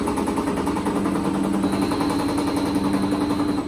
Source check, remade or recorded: recorded